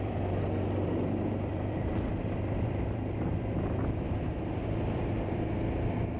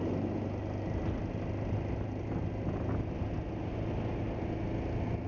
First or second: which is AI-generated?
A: first